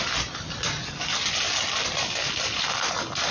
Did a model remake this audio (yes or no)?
no